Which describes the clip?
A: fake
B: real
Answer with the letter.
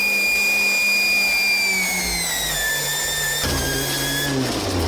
B